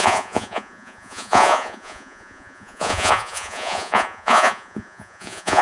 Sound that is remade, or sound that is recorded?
remade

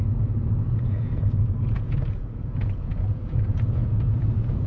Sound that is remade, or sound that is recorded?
remade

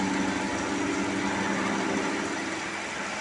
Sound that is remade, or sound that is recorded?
recorded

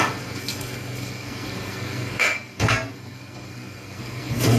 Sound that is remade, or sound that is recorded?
remade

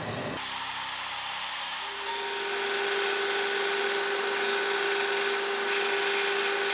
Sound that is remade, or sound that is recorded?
recorded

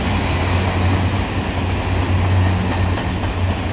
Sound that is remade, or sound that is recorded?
recorded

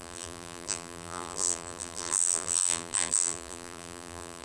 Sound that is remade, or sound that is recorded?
remade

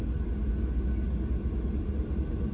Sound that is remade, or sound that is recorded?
recorded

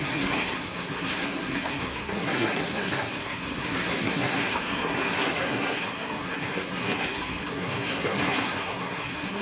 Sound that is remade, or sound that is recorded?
remade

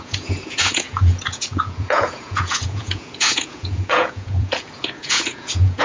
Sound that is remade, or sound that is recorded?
remade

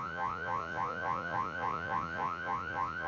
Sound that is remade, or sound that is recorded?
remade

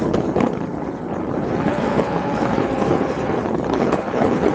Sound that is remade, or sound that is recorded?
remade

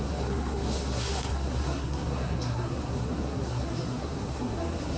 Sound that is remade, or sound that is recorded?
remade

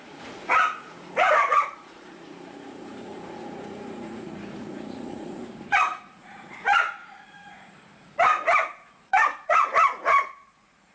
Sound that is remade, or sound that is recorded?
remade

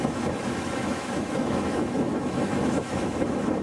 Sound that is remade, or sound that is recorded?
remade